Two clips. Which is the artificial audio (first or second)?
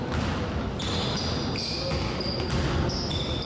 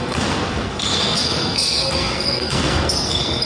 second